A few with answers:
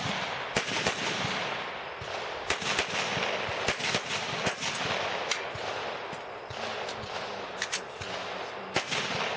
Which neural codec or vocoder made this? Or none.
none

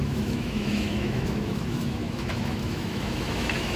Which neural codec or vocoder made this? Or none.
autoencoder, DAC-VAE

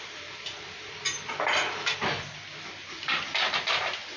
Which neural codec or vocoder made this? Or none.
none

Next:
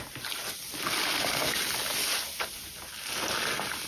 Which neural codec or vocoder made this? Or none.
none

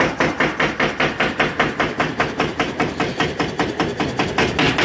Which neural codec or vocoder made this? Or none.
none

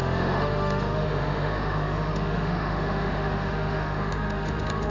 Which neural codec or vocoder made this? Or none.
autoencoder, DAC-VAE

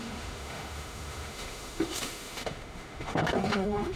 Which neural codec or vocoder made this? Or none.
autoencoder, DAC-VAE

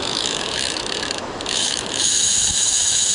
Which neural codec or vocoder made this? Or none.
autoencoder, DAC-VAE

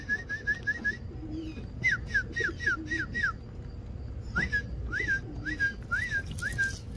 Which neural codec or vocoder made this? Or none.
none